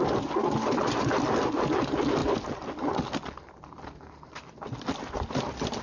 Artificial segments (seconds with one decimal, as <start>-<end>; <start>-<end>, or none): 2.2-5.8

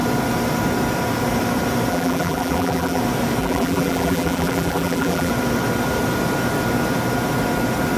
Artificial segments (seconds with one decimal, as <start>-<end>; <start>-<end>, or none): 1.9-3.0; 3.4-5.3

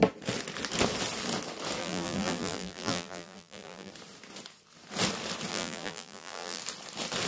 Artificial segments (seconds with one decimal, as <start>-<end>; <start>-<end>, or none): 1.8-3.9; 5.5-6.6

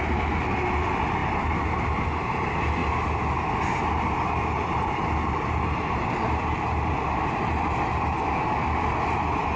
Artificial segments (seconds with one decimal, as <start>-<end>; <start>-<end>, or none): 1.2-2.3; 6.4-6.9

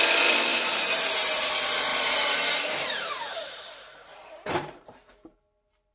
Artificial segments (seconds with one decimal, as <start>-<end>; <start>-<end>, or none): 0.5-1.5; 1.9-5.4

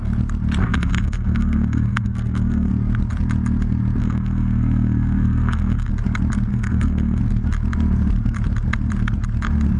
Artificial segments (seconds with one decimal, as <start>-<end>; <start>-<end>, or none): 0.6-2.7; 4.0-5.9; 6.5-7.2

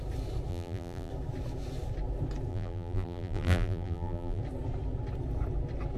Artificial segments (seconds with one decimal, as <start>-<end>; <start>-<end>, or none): 0.5-1.1; 2.5-4.4

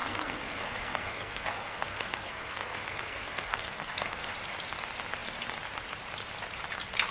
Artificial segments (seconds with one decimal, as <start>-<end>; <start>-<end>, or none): 0.0-4.3